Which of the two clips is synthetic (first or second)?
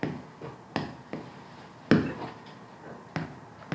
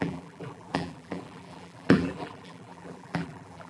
second